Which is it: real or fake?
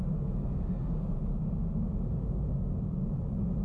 real